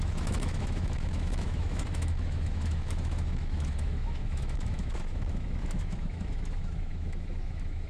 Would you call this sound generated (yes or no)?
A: yes